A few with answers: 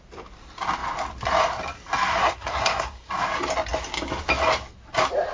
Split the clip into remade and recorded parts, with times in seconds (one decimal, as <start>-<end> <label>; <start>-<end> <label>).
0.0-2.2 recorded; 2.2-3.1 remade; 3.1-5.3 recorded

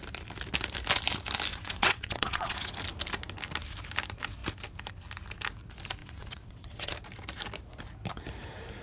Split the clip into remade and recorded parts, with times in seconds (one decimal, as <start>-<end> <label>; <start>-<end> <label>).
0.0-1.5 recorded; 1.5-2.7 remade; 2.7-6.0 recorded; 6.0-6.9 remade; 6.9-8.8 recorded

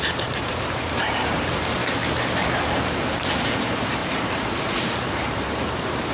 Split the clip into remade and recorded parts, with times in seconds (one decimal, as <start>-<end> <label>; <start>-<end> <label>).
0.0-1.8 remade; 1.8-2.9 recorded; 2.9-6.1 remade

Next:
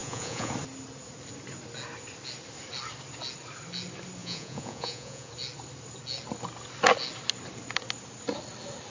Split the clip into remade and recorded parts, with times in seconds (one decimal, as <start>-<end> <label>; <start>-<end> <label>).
0.0-0.5 remade; 0.5-4.2 recorded; 4.2-5.3 remade; 5.3-8.9 recorded